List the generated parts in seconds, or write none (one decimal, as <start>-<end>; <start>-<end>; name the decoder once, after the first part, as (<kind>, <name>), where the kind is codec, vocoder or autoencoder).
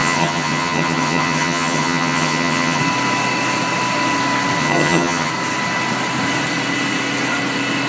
0.0-2.8 (vocoder, HiFi-GAN); 4.6-5.3